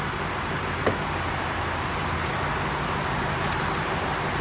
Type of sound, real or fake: real